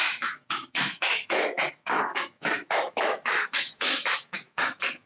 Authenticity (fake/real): fake